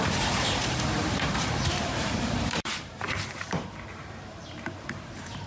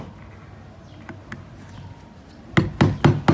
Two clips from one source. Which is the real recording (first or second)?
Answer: second